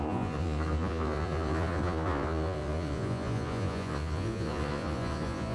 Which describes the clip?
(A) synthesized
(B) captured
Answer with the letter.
A